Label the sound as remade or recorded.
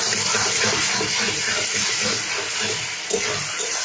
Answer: remade